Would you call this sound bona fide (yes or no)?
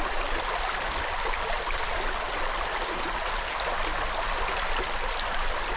yes